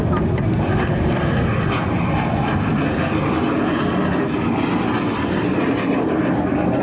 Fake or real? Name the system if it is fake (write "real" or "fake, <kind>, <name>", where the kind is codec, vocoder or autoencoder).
real